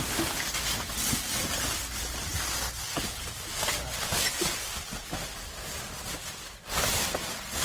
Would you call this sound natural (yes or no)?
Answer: yes